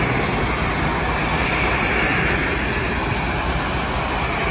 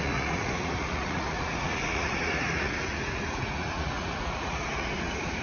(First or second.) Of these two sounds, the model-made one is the second